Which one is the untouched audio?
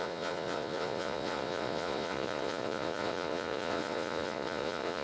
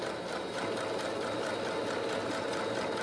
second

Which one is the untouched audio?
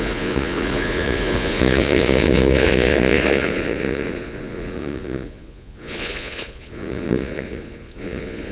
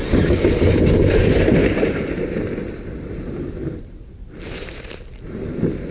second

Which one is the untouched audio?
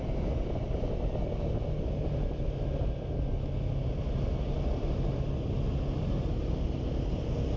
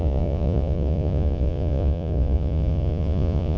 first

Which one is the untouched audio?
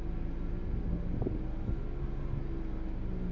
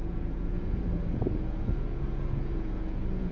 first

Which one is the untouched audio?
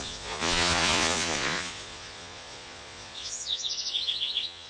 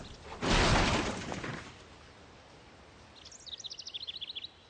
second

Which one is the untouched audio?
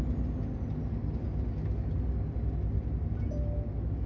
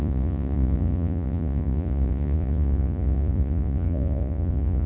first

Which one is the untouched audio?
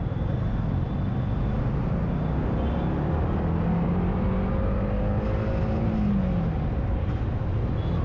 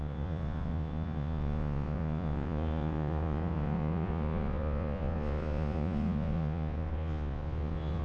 first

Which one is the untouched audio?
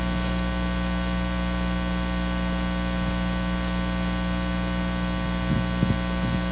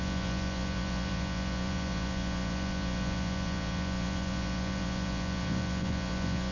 first